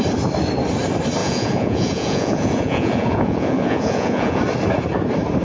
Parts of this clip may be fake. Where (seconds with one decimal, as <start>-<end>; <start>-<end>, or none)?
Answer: 1.2-4.4